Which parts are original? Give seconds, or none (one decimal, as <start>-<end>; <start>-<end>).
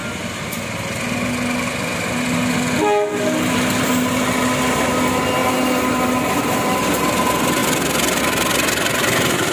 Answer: 0.0-9.5